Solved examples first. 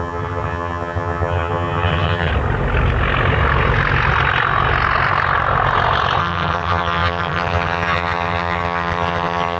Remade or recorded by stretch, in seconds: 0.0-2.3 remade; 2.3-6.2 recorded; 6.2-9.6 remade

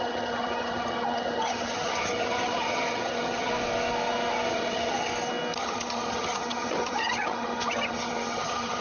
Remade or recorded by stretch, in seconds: 0.0-3.5 remade; 3.5-4.5 recorded; 4.5-5.1 remade; 5.1-5.6 recorded; 5.6-8.8 remade